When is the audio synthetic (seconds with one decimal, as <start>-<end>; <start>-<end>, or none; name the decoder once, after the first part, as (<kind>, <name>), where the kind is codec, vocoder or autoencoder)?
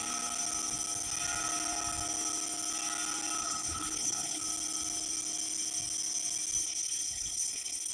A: 3.4-4.4 (codec, HILCodec); 6.6-7.9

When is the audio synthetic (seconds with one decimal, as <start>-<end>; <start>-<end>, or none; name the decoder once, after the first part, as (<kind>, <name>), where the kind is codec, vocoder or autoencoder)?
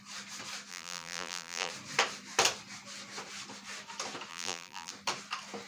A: 0.7-1.7 (vocoder, BigVGAN v2); 4.3-4.9